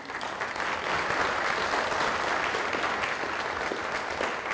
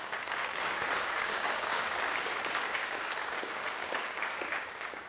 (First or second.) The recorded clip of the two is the first